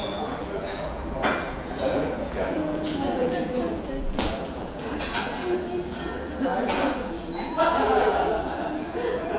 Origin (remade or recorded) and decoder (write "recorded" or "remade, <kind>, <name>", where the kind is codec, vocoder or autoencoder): remade, vocoder, BigVGAN v2